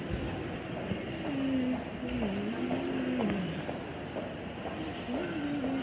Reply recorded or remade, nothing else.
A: recorded